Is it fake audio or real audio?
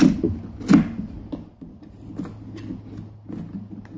real